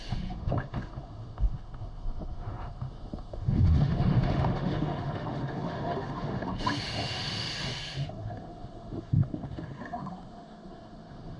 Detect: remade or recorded remade